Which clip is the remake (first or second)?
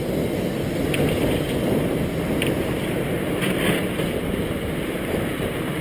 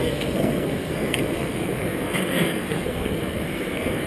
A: second